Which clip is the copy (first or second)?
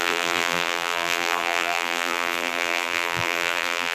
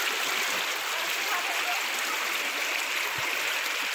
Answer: first